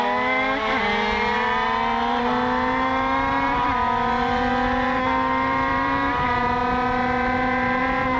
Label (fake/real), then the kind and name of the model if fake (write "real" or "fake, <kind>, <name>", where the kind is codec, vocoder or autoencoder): fake, vocoder, BigVGAN v2